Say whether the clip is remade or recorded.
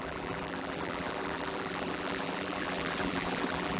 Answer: remade